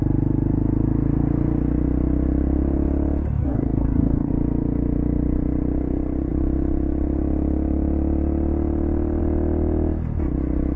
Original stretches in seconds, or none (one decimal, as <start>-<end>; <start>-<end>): 0.0-3.4; 4.3-10.8